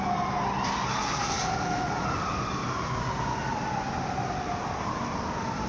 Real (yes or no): yes